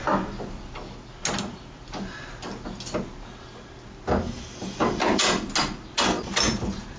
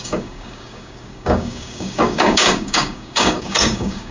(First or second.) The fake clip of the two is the second